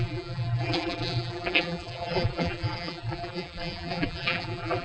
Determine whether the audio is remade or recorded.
remade